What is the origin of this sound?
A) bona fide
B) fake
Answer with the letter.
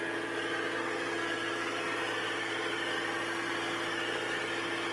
A